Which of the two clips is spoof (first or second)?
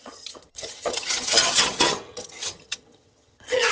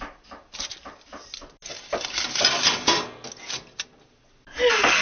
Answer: first